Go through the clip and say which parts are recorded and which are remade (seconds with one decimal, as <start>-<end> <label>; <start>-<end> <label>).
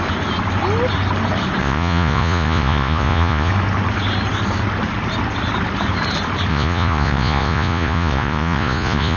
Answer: 0.0-1.6 recorded; 1.6-3.5 remade; 3.5-6.5 recorded; 6.5-9.2 remade